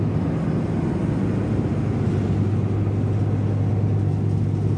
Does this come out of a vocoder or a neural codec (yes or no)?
no